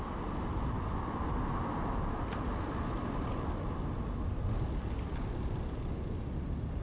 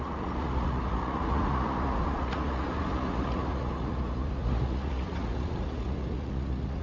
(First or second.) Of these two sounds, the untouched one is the first